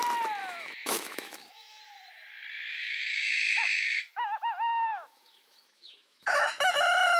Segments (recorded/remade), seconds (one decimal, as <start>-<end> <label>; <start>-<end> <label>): 0.0-0.4 recorded; 0.4-1.8 remade; 1.8-2.7 recorded; 2.7-6.7 remade; 6.7-7.2 recorded